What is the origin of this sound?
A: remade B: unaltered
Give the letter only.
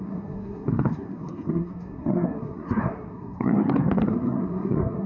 A